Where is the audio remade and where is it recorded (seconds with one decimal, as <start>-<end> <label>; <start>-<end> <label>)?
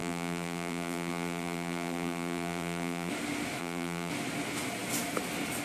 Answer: 0.0-3.1 remade; 3.1-3.6 recorded; 3.6-4.1 remade; 4.1-5.6 recorded